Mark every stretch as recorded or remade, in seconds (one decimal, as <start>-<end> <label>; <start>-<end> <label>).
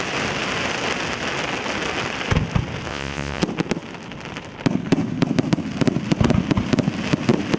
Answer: 0.0-2.9 recorded; 2.9-3.4 remade; 3.4-7.6 recorded